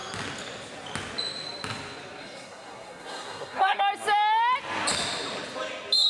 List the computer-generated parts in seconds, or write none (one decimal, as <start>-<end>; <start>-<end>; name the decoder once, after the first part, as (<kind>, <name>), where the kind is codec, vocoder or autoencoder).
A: 2.2-3.8 (codec, SNAC)